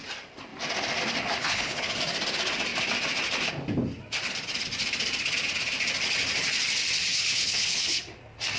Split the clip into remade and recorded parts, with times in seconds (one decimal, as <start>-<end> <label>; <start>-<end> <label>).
0.0-1.4 recorded; 1.4-2.0 remade; 2.0-7.1 recorded; 7.1-8.0 remade; 8.0-8.6 recorded